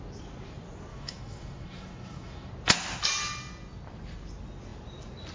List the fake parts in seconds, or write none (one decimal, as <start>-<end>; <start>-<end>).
0.9-2.5